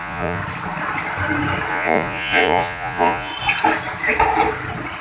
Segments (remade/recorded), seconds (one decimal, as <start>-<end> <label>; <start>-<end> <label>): 0.0-0.4 remade; 0.4-1.7 recorded; 1.7-3.3 remade; 3.3-5.0 recorded